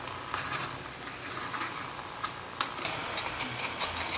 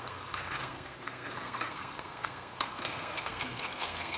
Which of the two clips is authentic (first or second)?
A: first